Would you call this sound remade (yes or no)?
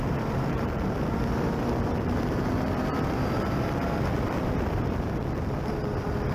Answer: yes